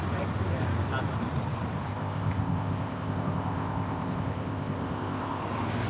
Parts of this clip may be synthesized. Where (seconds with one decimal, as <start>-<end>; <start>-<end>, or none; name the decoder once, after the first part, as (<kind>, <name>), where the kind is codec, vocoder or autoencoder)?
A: 1.9-5.4 (codec, ZipCodec)